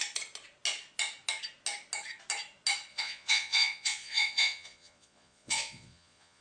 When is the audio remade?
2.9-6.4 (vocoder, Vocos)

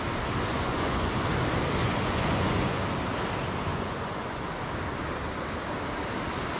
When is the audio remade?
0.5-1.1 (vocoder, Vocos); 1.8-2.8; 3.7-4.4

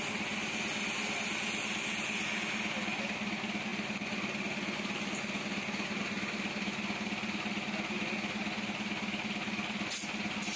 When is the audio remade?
none

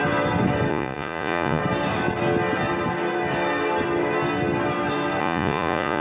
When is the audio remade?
0.7-1.6 (vocoder, Vocos); 5.2-6.0